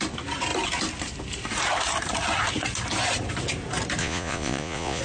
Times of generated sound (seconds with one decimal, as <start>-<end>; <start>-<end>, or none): 4.0-5.0